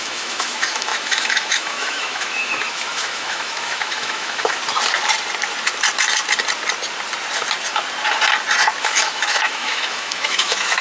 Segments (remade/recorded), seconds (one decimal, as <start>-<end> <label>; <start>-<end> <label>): 0.0-4.6 remade; 4.6-8.8 recorded; 8.8-10.8 remade